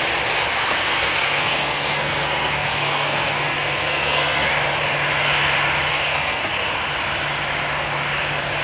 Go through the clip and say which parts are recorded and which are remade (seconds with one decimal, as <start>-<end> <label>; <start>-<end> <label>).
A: 0.0-0.5 recorded; 0.5-4.5 remade; 4.5-5.9 recorded; 5.9-6.5 remade; 6.5-8.6 recorded